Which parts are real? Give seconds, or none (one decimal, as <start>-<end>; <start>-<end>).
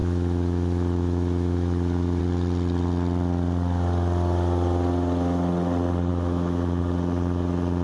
2.2-6.1; 6.8-7.8